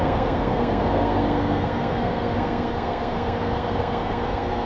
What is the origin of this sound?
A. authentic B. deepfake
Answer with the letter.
B